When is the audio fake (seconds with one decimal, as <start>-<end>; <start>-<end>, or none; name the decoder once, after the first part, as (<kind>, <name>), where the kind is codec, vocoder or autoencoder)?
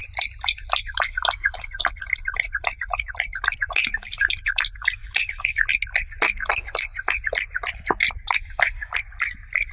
none